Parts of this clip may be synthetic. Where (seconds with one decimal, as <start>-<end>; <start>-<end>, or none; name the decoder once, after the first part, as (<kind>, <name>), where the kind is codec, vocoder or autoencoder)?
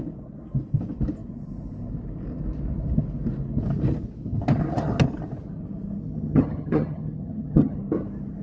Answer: 6.0-7.8 (vocoder, HiFi-GAN)